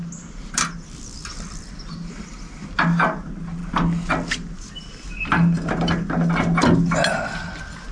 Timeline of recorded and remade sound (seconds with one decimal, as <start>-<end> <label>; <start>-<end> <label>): 0.0-7.9 recorded